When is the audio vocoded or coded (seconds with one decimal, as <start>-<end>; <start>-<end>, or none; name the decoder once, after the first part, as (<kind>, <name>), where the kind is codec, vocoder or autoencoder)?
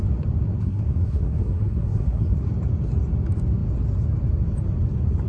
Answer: 0.6-2.4 (codec, SNAC)